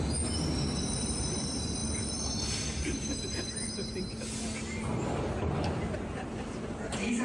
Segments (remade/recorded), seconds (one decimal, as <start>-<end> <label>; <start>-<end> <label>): 0.0-7.2 recorded

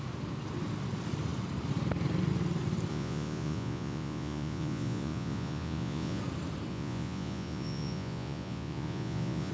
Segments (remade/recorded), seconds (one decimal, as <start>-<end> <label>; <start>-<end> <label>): 0.0-2.9 recorded; 2.9-6.2 remade; 6.2-6.7 recorded; 6.7-9.5 remade

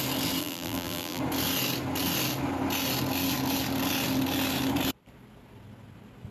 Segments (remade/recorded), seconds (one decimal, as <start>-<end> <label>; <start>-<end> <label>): 0.0-0.4 recorded; 0.4-1.2 remade; 1.2-6.3 recorded

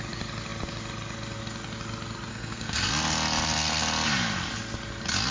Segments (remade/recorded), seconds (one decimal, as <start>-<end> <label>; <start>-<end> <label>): 0.0-2.3 recorded; 2.3-2.9 remade; 2.9-5.3 recorded

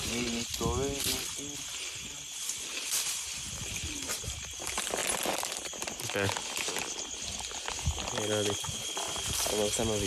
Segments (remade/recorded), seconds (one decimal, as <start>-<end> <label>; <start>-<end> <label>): 0.0-10.1 recorded

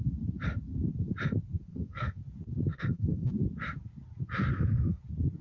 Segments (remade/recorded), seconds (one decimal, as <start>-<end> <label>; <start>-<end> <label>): 0.0-1.7 recorded; 1.7-2.2 remade; 2.2-2.7 recorded; 2.7-3.3 remade; 3.3-4.5 recorded; 4.5-5.0 remade; 5.0-5.4 recorded